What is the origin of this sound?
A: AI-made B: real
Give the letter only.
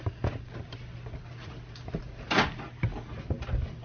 B